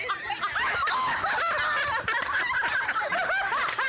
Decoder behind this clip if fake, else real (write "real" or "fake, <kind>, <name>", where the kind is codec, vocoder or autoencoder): real